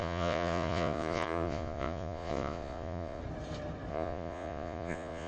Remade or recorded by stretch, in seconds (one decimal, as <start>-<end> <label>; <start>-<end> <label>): 0.0-3.2 remade; 3.2-3.9 recorded; 3.9-5.3 remade